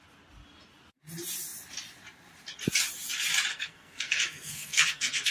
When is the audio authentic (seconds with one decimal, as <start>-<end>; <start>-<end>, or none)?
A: 0.0-3.5